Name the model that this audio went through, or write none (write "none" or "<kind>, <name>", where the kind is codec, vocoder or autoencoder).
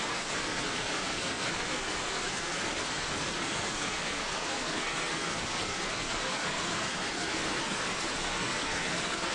codec, SNAC